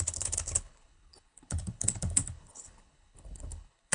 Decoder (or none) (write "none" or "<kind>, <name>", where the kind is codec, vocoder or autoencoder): codec, HILCodec